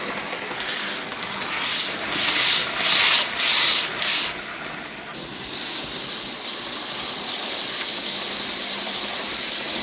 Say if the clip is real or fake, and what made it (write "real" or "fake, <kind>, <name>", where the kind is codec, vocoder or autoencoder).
real